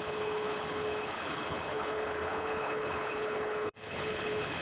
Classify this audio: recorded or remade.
remade